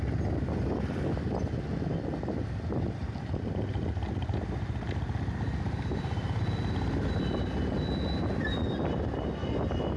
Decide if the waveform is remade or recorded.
recorded